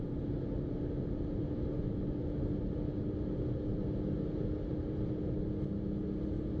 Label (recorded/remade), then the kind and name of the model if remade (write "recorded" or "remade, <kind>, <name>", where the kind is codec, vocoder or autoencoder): recorded